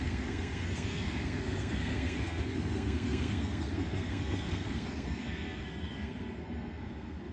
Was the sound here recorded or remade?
remade